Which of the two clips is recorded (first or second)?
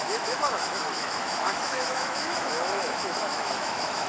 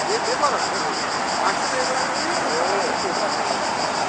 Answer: second